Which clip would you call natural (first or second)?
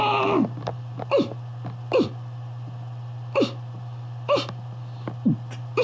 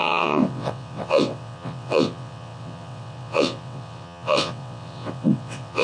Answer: first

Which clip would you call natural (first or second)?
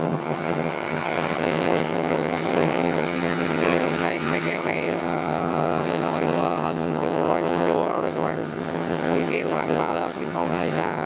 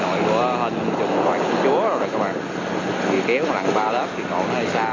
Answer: second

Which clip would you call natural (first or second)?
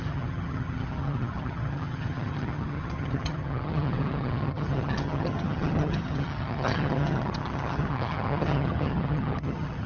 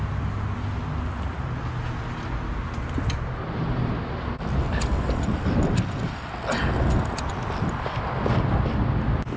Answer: second